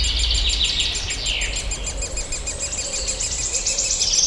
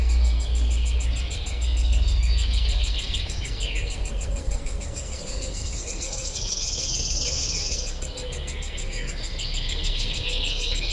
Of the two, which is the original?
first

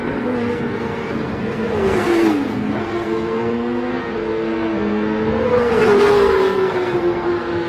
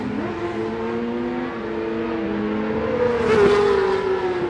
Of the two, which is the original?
second